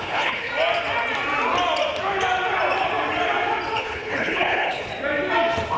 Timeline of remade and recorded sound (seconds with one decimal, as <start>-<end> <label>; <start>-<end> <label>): 0.0-0.5 remade; 0.5-3.8 recorded; 3.8-4.9 remade; 4.9-5.8 recorded